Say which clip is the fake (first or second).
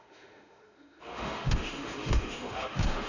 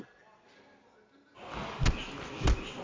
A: first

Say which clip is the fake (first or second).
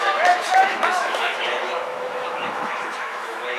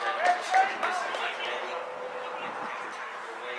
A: first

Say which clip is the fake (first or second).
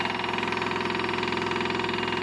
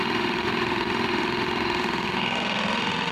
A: second